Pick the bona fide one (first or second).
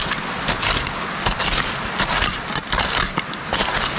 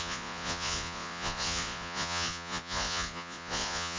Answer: first